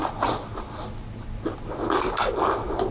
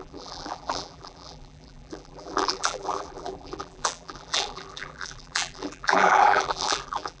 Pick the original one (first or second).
first